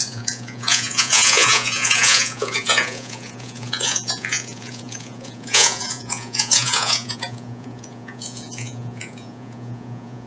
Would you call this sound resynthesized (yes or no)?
yes